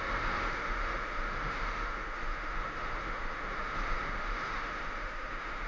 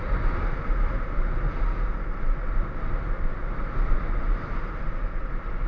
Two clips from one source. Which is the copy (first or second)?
first